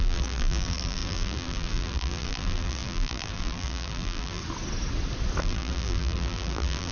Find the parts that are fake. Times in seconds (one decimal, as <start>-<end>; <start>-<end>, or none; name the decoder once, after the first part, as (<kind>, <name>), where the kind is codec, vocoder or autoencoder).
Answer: 0.0-4.4 (vocoder, BigVGAN v2); 5.4-6.9